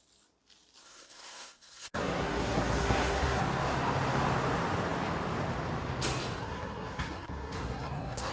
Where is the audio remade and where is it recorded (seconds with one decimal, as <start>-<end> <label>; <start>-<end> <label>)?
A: 0.0-0.8 recorded; 0.8-3.4 remade; 3.4-6.4 recorded; 6.4-8.3 remade